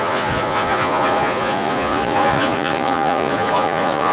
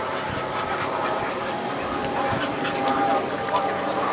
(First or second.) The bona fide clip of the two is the second